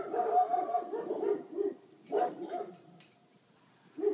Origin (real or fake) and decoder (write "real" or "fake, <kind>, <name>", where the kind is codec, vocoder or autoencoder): real